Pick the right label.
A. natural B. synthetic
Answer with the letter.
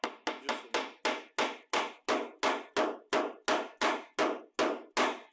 A